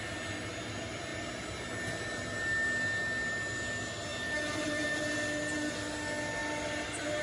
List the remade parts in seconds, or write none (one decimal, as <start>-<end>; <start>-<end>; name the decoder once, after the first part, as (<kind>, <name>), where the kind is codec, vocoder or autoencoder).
none